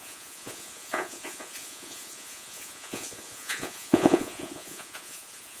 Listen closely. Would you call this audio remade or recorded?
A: remade